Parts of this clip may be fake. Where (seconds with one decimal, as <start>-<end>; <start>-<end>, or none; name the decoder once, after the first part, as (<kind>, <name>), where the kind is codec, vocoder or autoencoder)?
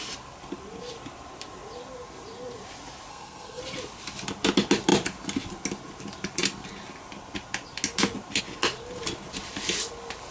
3.1-3.6 (codec, SNAC)